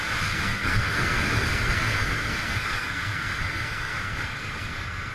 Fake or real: fake